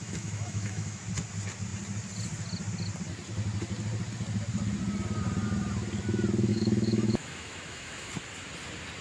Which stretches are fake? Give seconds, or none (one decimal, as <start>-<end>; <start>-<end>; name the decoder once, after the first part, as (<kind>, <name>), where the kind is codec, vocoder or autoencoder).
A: 0.0-1.0 (autoencoder, DAC-VAE); 6.5-8.1